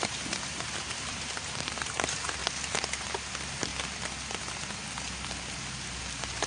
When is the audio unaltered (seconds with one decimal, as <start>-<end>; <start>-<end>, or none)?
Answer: 2.4-3.0; 3.7-6.0